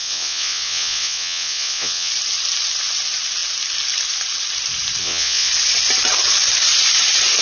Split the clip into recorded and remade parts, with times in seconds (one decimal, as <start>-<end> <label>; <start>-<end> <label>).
0.0-2.1 remade; 2.1-5.0 recorded; 5.0-5.5 remade; 5.5-7.4 recorded